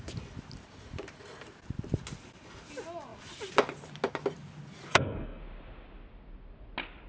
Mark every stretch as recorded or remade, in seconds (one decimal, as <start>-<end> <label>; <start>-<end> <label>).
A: 0.0-4.9 recorded; 4.9-5.4 remade; 5.4-7.1 recorded